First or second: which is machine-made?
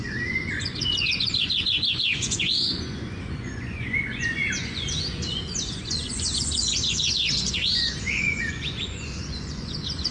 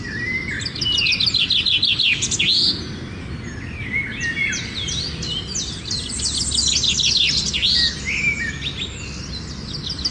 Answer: first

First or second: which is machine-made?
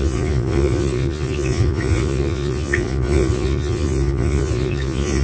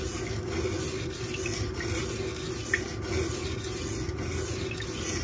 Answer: first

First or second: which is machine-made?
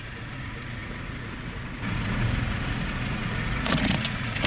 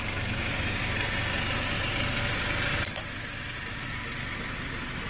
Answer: first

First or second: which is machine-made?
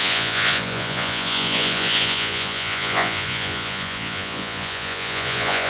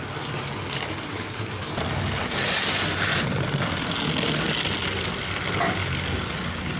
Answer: first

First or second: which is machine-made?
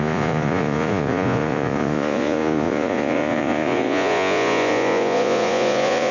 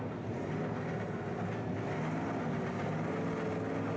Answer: first